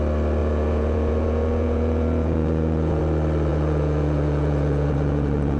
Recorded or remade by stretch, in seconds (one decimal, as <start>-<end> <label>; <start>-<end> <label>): 0.0-0.4 recorded; 0.4-3.0 remade; 3.0-3.5 recorded; 3.5-5.6 remade